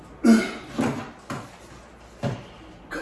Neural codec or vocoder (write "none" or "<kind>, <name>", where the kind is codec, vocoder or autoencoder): none